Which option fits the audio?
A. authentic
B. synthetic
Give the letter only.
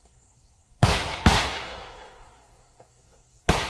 B